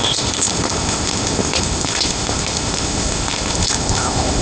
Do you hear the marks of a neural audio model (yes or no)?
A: yes